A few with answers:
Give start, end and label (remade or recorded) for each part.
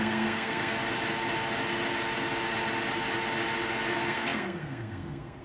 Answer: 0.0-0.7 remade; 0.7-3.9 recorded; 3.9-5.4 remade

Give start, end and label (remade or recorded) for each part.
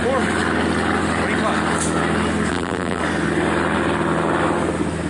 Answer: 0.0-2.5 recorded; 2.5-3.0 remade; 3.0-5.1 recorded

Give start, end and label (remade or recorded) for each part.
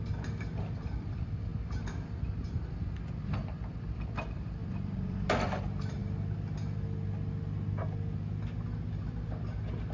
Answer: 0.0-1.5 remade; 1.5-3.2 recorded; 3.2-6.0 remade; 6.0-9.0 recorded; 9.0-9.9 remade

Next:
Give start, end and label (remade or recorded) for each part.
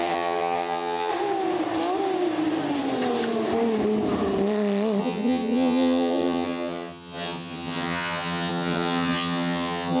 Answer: 0.0-1.1 remade; 1.1-5.0 recorded; 5.0-10.0 remade